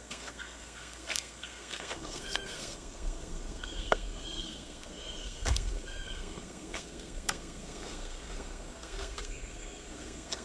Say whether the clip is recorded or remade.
remade